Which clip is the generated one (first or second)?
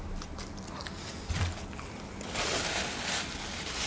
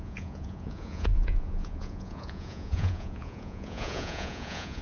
second